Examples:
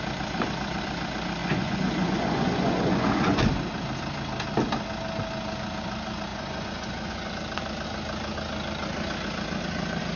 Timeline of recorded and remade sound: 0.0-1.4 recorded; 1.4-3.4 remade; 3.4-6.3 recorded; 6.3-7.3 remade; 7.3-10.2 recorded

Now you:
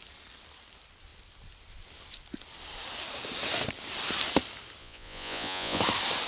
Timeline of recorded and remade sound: 0.0-4.8 recorded; 4.8-5.8 remade; 5.8-6.3 recorded